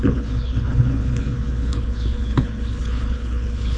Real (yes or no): no